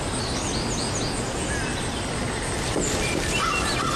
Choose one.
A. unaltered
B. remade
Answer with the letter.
A